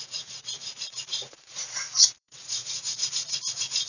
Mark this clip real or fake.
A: fake